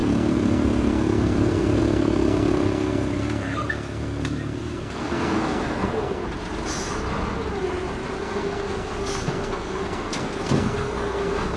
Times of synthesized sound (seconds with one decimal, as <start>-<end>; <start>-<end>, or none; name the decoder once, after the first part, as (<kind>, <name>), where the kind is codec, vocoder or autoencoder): 0.0-6.2 (codec, SNAC); 8.2-11.6